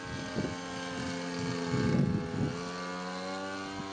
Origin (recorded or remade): recorded